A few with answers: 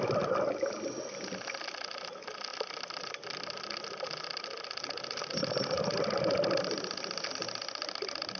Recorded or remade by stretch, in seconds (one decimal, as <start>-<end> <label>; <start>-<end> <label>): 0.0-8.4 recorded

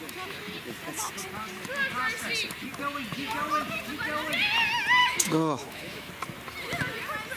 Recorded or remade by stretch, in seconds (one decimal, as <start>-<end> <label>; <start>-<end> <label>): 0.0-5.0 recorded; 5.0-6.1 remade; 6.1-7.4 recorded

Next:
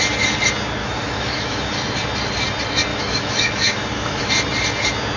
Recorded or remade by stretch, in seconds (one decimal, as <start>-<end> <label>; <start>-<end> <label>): 0.0-0.8 recorded; 0.8-1.7 remade; 1.7-2.9 recorded; 2.9-4.3 remade; 4.3-5.2 recorded

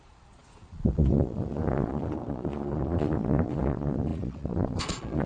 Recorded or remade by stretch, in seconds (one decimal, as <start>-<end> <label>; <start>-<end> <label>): 0.0-5.3 remade